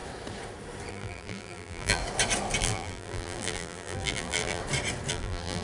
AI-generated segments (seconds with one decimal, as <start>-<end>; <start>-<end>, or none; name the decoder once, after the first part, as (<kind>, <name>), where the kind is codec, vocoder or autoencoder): 0.9-2.0 (vocoder, BigVGAN v2); 2.6-4.6; 5.1-5.6